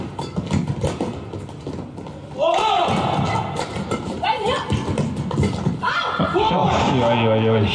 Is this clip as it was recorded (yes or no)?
yes